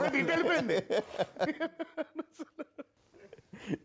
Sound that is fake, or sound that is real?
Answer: real